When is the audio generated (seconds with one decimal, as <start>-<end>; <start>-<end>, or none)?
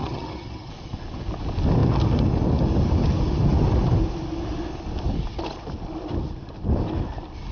0.0-0.7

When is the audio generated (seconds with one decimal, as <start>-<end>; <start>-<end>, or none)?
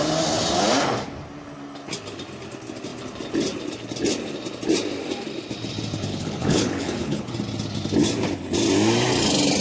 6.1-7.3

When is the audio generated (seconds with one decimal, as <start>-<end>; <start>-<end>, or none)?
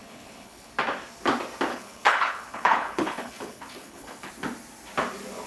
0.0-0.7; 1.7-4.3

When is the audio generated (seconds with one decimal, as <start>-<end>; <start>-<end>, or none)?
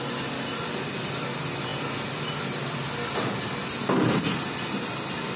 none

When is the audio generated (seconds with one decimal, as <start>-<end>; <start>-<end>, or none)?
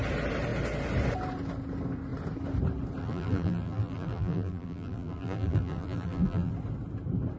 3.0-6.5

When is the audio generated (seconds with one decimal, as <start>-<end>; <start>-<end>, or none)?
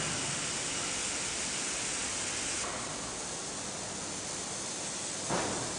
none